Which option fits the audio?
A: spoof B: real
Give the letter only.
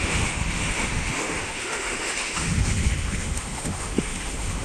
A